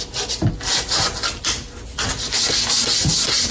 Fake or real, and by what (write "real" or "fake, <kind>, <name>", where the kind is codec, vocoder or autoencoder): real